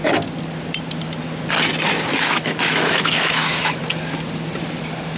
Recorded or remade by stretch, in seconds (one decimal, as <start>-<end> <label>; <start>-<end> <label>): 0.0-2.1 recorded; 2.1-3.8 remade; 3.8-5.2 recorded